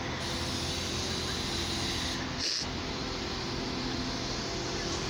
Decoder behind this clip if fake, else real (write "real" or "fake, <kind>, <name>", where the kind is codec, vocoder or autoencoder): real